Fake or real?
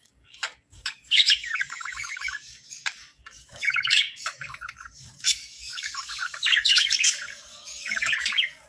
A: fake